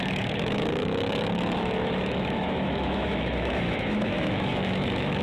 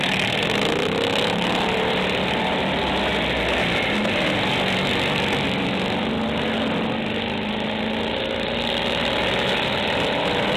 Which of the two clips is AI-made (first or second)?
first